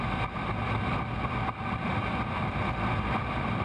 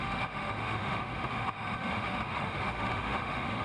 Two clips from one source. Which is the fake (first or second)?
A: second